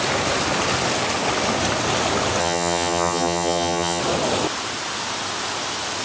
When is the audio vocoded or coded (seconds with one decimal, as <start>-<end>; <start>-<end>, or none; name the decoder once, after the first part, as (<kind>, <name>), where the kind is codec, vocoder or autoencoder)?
2.4-4.0 (vocoder, HiFi-GAN)